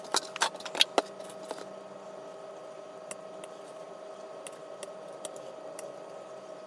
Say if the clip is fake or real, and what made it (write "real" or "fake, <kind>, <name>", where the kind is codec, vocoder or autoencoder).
real